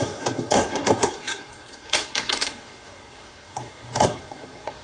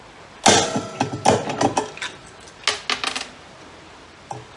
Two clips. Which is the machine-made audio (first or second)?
first